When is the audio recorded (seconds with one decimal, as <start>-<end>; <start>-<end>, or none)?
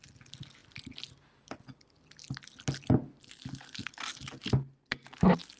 0.0-5.6